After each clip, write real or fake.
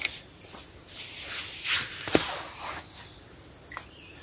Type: real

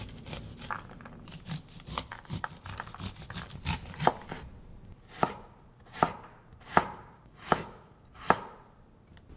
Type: real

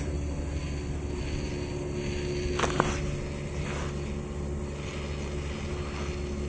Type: real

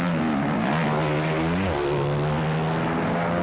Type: real